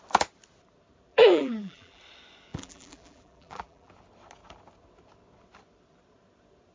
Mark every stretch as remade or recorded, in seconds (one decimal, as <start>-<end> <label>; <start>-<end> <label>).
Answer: 0.0-1.1 recorded; 1.1-2.0 remade; 2.0-2.5 recorded; 2.5-3.9 remade; 3.9-6.7 recorded